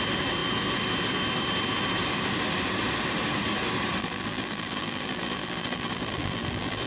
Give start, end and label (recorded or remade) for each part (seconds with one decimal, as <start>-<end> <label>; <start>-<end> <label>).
0.0-4.0 recorded; 4.0-6.9 remade